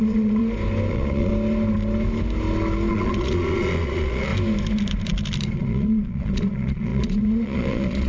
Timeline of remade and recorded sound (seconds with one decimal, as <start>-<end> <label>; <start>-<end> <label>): 0.0-0.4 remade; 0.4-0.9 recorded; 0.9-1.3 remade; 1.3-2.9 recorded; 2.9-4.3 remade; 4.3-5.5 recorded; 5.5-8.1 remade